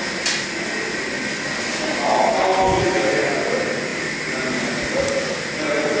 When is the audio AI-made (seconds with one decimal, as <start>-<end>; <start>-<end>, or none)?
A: 2.3-2.8